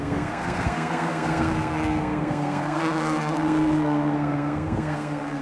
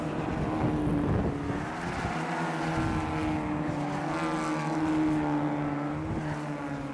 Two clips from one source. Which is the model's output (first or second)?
first